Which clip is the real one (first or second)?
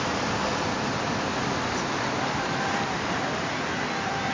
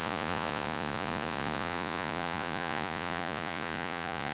first